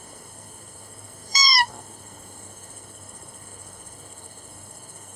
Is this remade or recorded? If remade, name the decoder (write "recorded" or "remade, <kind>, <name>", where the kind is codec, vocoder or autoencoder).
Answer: remade, codec, SNAC